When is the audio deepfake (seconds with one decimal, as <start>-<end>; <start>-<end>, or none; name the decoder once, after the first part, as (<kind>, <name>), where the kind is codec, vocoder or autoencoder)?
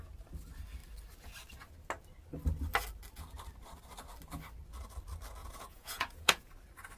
5.4-6.5 (vocoder, Vocos)